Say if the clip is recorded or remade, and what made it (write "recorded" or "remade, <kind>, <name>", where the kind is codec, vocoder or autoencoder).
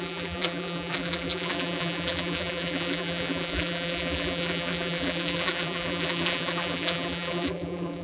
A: remade, vocoder, BigVGAN v2